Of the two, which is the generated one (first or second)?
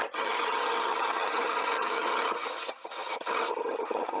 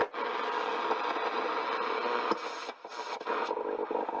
first